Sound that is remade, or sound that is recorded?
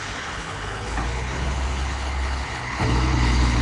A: remade